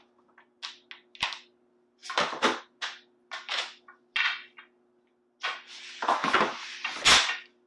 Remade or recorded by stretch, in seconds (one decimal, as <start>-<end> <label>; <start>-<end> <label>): 0.0-7.7 recorded